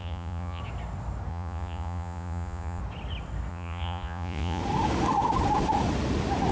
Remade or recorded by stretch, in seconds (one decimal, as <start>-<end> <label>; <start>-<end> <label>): 0.0-0.6 remade; 0.6-1.3 recorded; 1.3-2.8 remade; 2.8-3.5 recorded; 3.5-4.6 remade; 4.6-6.5 recorded